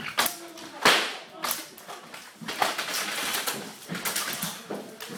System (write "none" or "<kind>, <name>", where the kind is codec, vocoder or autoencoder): none